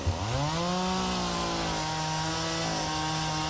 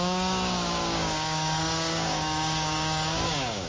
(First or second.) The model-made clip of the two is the second